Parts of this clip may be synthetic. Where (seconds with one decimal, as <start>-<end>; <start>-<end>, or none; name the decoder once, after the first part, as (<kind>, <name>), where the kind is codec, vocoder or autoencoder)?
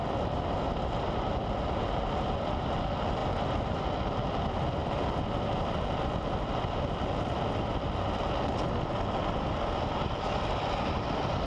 none